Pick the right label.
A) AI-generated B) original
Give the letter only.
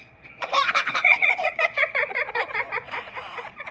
A